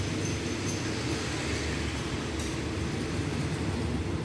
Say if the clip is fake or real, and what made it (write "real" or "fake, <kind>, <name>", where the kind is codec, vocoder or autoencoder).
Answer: real